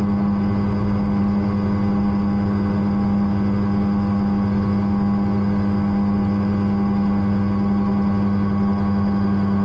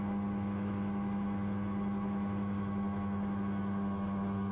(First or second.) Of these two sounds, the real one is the first